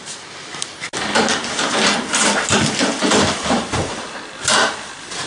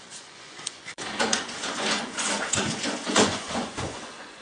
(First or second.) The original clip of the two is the first